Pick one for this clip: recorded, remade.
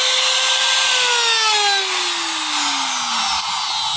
recorded